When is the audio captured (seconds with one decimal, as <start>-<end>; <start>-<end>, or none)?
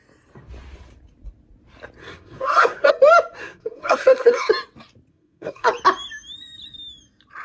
0.0-2.0; 2.9-3.4; 4.5-5.1; 5.7-7.4